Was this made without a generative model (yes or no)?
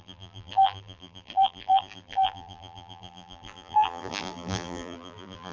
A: no